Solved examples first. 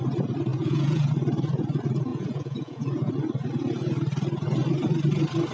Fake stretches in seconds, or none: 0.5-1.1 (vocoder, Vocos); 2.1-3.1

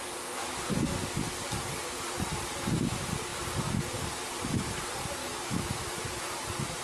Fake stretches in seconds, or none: 5.2-5.9 (autoencoder, DAC-VAE)

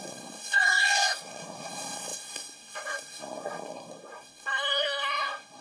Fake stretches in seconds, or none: 0.0-5.6 (codec, SNAC)